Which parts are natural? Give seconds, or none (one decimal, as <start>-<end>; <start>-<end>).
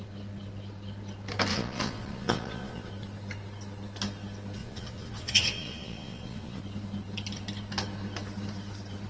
0.0-1.5; 2.9-4.6; 6.6-9.1